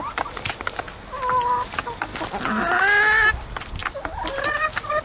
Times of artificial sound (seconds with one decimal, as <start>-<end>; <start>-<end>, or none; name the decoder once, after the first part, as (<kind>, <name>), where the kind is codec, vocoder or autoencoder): none